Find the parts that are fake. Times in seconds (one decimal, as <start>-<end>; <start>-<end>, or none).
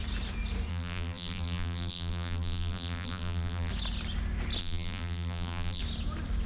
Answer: 0.7-3.7; 4.6-5.8